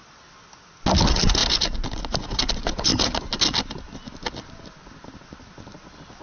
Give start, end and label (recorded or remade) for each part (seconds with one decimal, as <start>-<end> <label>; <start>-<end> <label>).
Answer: 0.0-6.2 recorded